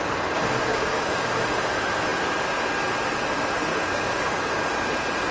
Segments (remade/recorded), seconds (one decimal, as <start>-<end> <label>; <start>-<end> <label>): 0.0-0.7 recorded; 0.7-1.4 remade; 1.4-3.7 recorded; 3.7-4.5 remade; 4.5-5.3 recorded